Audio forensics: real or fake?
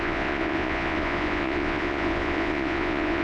fake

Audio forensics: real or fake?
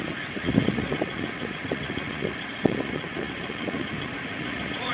fake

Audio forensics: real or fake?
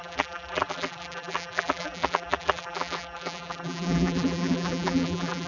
fake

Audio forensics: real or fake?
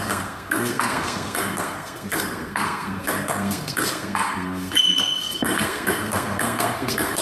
fake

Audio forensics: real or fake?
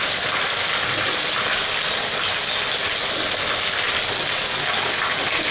real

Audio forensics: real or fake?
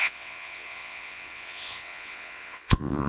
fake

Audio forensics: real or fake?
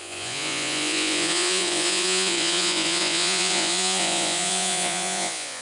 fake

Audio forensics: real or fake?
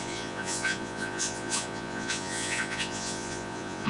fake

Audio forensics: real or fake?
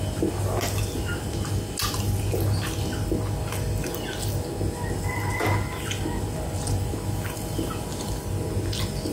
real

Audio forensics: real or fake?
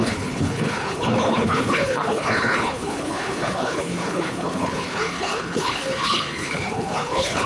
fake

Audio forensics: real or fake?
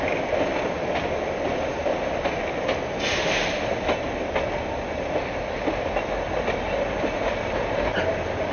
real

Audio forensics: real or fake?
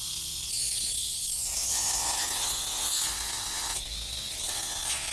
real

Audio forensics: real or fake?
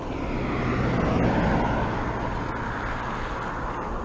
real